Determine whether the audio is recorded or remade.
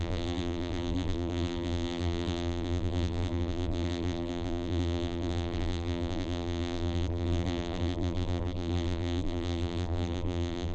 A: remade